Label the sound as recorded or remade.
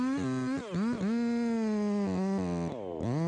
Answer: recorded